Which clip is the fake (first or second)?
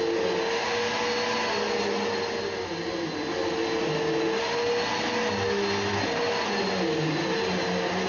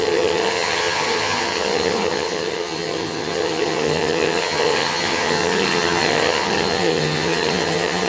second